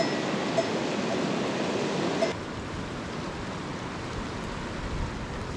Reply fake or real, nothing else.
real